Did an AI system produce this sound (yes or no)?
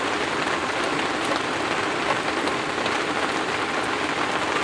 no